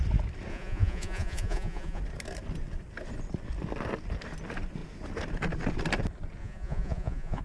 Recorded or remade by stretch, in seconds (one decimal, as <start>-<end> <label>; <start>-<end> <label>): 0.0-0.5 recorded; 0.5-2.0 remade; 2.0-6.4 recorded; 6.4-7.4 remade